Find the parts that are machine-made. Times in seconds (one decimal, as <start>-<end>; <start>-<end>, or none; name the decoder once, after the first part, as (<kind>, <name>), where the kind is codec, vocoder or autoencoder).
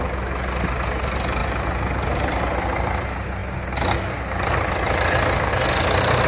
none